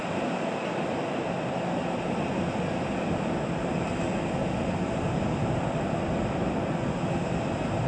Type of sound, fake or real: real